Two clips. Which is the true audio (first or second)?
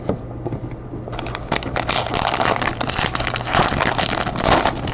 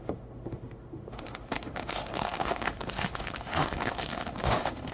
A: first